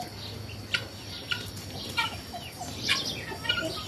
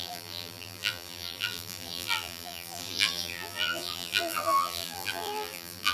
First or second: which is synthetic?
second